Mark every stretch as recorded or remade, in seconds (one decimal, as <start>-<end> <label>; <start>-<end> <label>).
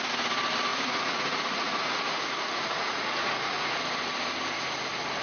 0.0-0.7 recorded; 0.7-3.7 remade; 3.7-5.2 recorded